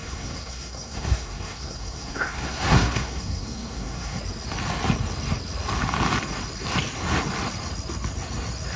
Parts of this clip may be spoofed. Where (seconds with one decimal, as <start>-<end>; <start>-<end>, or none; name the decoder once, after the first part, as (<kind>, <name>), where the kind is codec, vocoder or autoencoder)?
0.0-4.2 (codec, SNAC)